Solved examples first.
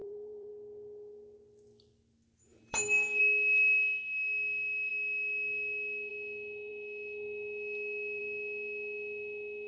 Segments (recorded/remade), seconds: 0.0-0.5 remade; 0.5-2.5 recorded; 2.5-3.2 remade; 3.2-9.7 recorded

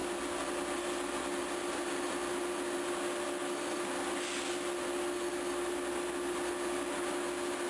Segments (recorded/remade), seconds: 0.0-7.7 recorded

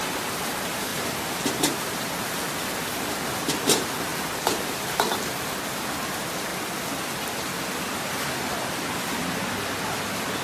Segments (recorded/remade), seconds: 0.0-0.9 recorded; 0.9-1.9 remade; 1.9-4.1 recorded; 4.1-4.9 remade; 4.9-10.4 recorded

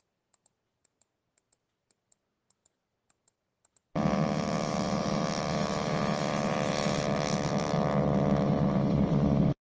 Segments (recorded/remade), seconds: 0.0-9.7 remade

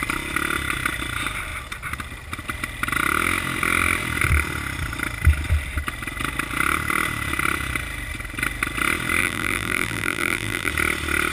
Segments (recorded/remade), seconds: 0.0-9.2 recorded; 9.2-10.7 remade; 10.7-11.3 recorded

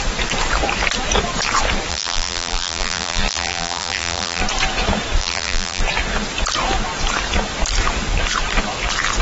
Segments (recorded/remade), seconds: 0.0-1.9 recorded; 1.9-4.4 remade; 4.4-5.2 recorded; 5.2-5.8 remade; 5.8-9.2 recorded

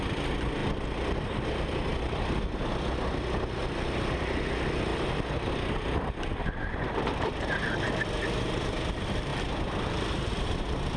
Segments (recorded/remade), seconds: 0.0-9.3 recorded; 9.3-10.5 remade; 10.5-11.0 recorded

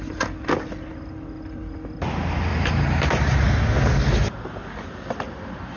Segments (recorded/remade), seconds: 0.0-2.5 recorded; 2.5-3.5 remade; 3.5-5.8 recorded